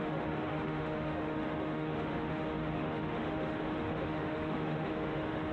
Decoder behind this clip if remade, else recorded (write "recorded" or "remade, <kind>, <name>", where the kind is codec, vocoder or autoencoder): remade, autoencoder, DAC-VAE